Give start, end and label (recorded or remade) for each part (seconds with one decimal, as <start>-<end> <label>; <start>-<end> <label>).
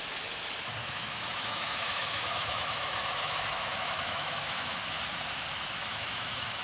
0.0-0.8 recorded; 0.8-4.8 remade; 4.8-5.9 recorded; 5.9-6.6 remade